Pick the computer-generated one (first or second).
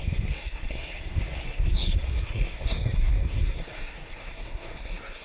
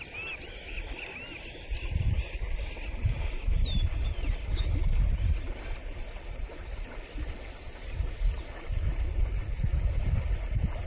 first